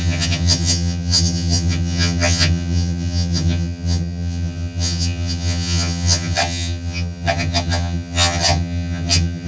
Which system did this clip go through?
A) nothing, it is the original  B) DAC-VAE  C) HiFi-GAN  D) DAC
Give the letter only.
C